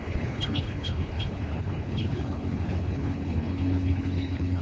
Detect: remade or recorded remade